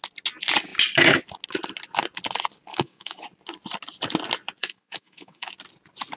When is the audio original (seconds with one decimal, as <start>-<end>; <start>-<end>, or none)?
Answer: 0.0-2.7; 3.2-4.6; 5.5-6.2